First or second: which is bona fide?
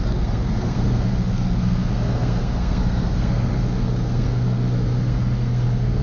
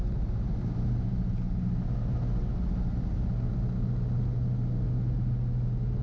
second